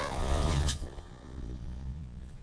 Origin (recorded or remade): remade